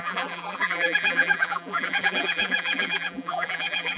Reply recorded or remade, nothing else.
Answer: remade